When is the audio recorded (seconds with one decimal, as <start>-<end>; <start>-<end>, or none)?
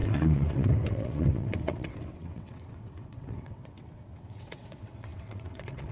none